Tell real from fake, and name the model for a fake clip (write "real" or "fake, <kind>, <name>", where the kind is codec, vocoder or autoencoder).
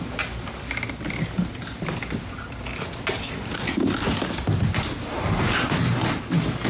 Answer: real